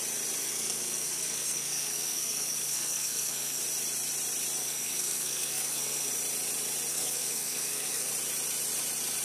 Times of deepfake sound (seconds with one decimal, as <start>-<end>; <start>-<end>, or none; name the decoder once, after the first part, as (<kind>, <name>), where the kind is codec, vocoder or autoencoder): 0.4-3.6 (codec, SNAC); 4.6-6.1; 6.9-8.1